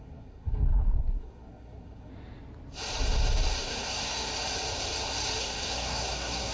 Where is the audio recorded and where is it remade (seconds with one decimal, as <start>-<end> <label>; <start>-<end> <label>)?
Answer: 0.0-2.1 remade; 2.1-3.6 recorded; 3.6-4.3 remade; 4.3-5.4 recorded; 5.4-6.5 remade